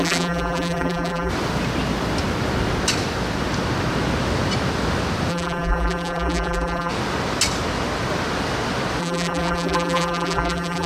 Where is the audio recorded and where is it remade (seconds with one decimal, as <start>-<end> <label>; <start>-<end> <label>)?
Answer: 0.0-1.3 remade; 1.3-5.3 recorded; 5.3-6.9 remade; 6.9-9.0 recorded; 9.0-10.9 remade